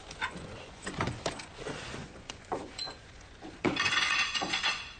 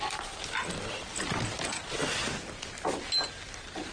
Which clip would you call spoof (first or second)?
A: first